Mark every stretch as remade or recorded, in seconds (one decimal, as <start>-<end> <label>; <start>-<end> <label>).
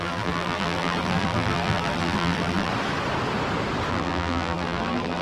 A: 0.0-2.7 remade; 2.7-3.9 recorded; 3.9-5.2 remade